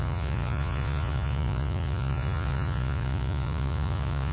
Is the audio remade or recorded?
remade